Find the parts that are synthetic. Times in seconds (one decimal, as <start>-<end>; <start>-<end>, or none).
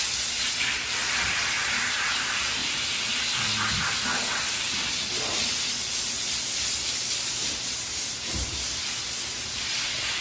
none